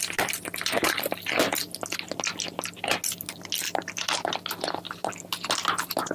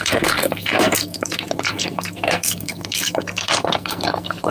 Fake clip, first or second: second